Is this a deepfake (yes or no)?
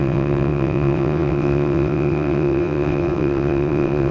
yes